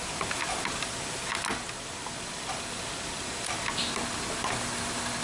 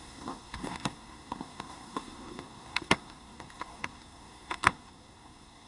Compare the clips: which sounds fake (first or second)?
second